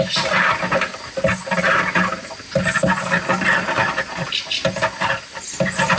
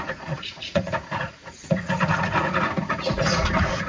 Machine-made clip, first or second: second